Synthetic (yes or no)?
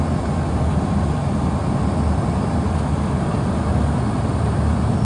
no